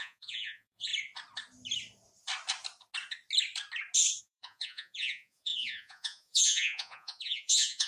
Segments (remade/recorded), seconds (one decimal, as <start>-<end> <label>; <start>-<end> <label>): 0.0-0.9 remade; 0.9-4.2 recorded; 4.2-7.9 remade